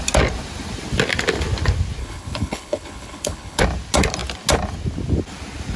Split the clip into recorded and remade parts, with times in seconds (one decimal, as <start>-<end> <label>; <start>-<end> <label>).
0.0-2.0 recorded; 2.0-3.6 remade; 3.6-5.8 recorded